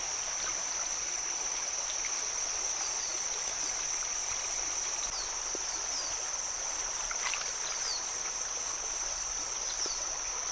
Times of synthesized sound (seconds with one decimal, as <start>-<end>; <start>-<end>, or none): none